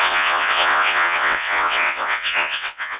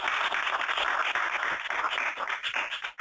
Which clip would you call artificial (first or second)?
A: first